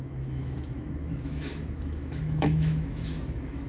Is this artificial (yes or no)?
yes